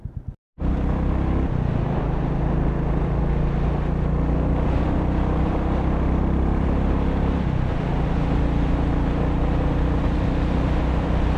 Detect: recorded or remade recorded